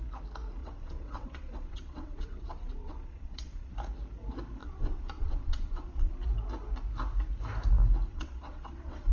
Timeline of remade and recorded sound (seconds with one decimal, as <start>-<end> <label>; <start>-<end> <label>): 0.0-0.6 recorded; 0.6-3.7 remade; 3.7-4.6 recorded; 4.6-6.1 remade; 6.1-8.1 recorded; 8.1-9.1 remade